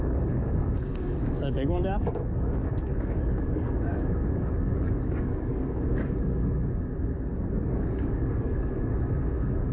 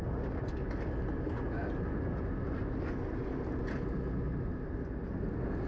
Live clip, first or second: second